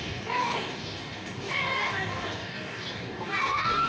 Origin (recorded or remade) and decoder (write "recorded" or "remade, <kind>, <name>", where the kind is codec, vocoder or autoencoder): remade, codec, DAC